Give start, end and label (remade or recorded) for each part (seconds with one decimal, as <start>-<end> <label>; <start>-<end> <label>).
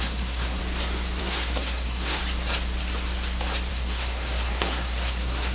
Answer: 0.0-0.6 remade; 0.6-1.2 recorded; 1.2-2.2 remade; 2.2-3.7 recorded; 3.7-5.5 remade